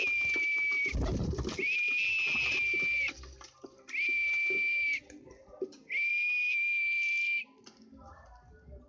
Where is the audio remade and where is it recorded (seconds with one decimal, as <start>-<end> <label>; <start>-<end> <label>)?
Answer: 0.0-8.9 recorded